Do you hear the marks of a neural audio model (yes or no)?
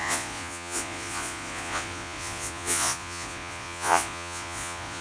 yes